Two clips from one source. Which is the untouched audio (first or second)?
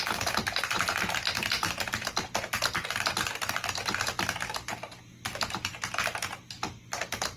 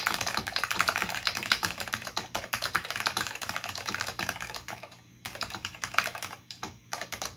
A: first